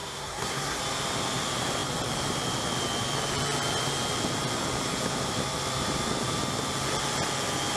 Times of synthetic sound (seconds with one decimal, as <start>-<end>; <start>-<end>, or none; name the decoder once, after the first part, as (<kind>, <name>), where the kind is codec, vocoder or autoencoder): 0.0-0.8 (codec, SNAC)